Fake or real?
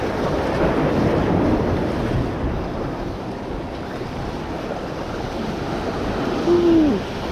real